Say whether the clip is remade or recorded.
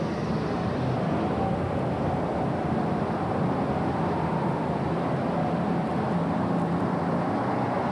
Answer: recorded